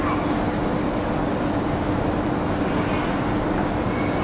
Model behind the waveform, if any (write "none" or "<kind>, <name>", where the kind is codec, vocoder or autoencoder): none